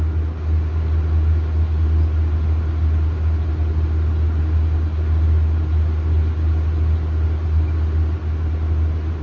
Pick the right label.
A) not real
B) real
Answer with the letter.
B